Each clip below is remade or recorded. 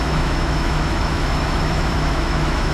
remade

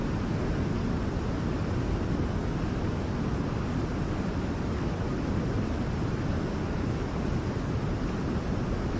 recorded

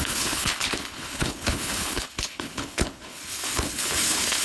remade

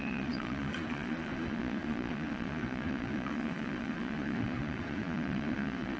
remade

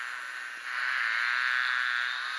recorded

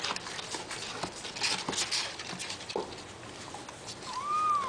recorded